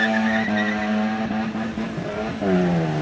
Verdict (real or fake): real